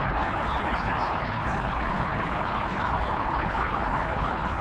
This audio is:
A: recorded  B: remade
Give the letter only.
B